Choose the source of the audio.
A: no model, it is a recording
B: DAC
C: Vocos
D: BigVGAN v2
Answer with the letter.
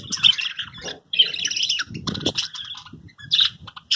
D